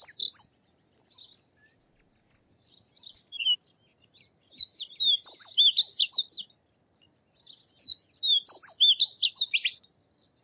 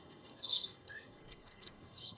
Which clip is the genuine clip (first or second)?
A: first